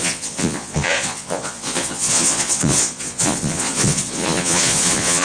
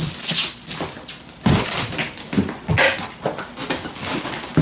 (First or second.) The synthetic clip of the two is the first